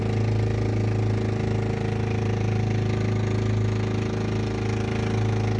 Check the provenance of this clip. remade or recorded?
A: recorded